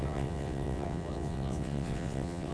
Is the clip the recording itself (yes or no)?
no